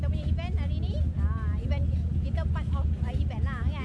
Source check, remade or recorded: recorded